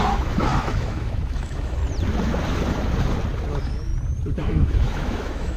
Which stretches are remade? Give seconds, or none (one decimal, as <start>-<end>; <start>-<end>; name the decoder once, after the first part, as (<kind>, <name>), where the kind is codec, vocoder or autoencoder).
0.0-1.8 (autoencoder, DAC-VAE); 3.5-3.9; 4.4-5.6

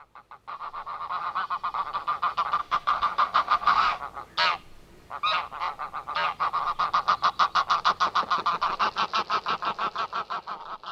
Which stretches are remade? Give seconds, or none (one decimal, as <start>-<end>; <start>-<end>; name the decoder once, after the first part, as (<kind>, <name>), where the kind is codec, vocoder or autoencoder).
2.6-4.0 (autoencoder, DAC-VAE)

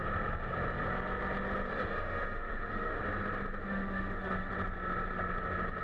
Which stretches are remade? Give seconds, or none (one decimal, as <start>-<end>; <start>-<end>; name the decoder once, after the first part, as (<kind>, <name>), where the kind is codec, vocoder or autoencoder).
1.7-3.0 (autoencoder, DAC-VAE); 3.6-4.5

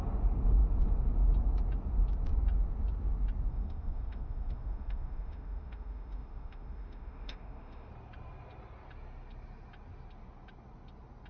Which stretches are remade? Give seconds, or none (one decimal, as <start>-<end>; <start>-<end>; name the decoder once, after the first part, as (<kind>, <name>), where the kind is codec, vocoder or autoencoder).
3.5-7.9 (autoencoder, DAC-VAE)

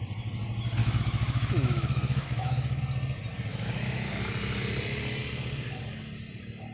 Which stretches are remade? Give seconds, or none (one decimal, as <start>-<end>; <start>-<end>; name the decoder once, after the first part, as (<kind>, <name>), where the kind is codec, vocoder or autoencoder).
0.8-2.8 (autoencoder, DAC-VAE); 3.5-4.1

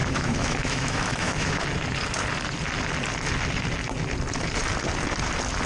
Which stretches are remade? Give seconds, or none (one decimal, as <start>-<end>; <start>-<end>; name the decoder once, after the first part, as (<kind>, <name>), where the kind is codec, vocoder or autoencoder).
0.0-1.6 (autoencoder, DAC-VAE)